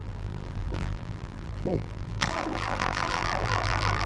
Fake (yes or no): yes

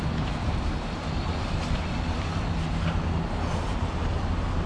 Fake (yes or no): no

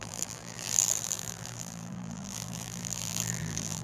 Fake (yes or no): yes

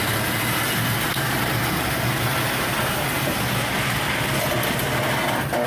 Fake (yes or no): no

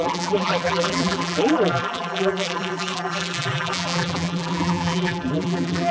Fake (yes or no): yes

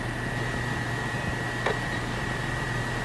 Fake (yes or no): no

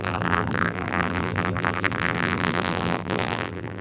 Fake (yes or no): yes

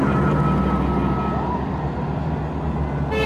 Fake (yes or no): no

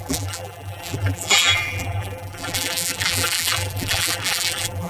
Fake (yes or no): yes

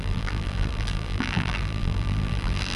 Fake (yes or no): yes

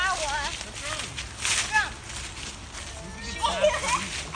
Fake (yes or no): no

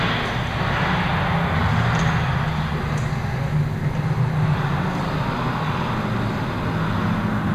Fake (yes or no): no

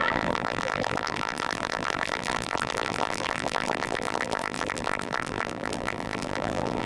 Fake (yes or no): yes